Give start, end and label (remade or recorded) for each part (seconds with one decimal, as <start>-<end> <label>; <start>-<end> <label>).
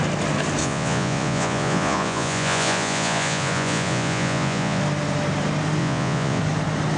0.0-0.6 recorded; 0.6-4.8 remade; 4.8-5.8 recorded; 5.8-6.4 remade; 6.4-7.0 recorded